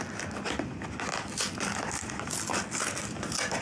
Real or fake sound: real